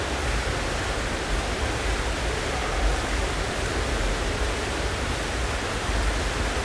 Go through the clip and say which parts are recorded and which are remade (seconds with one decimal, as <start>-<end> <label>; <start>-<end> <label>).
0.0-6.6 recorded